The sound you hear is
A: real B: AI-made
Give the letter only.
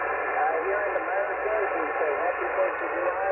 A